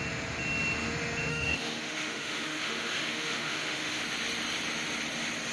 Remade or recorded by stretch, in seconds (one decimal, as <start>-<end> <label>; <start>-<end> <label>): 0.0-1.3 recorded; 1.3-4.0 remade; 4.0-5.5 recorded